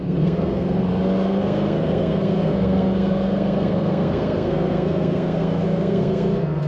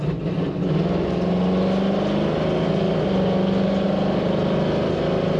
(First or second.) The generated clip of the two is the first